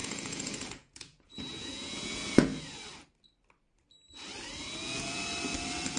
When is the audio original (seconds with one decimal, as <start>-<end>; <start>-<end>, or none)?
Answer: 2.5-4.8; 5.2-6.0